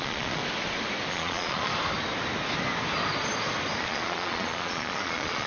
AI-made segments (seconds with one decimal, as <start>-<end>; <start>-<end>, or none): 0.0-0.4; 1.1-1.7; 3.8-5.5